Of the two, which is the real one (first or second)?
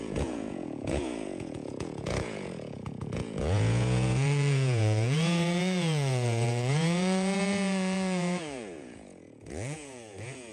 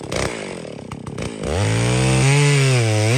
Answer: second